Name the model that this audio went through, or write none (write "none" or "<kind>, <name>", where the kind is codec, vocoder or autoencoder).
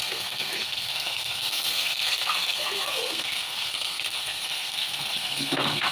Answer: codec, SNAC